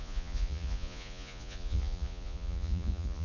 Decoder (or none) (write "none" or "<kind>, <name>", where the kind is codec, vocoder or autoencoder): vocoder, Vocos